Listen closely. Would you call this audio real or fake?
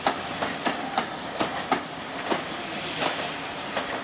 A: real